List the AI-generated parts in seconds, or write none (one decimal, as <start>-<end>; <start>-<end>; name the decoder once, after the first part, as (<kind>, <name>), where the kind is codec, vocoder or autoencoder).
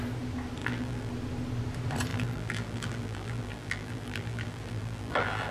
0.6-1.1 (vocoder, BigVGAN v2); 2.1-5.5